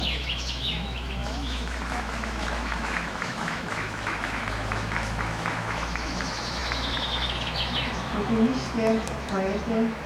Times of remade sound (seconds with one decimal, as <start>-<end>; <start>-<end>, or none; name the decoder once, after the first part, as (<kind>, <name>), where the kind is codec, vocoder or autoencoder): 0.0-10.1 (autoencoder, DAC-VAE)